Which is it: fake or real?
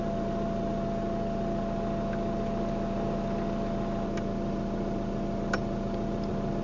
real